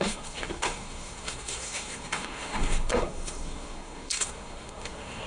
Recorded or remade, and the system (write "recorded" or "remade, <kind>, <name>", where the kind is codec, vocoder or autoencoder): remade, codec, SNAC